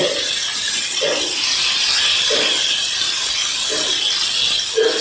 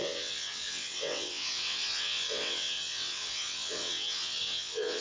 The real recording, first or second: first